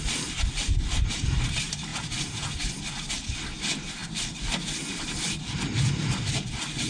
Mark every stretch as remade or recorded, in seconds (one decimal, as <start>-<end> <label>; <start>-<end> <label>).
0.0-4.0 recorded; 4.0-5.8 remade; 5.8-6.9 recorded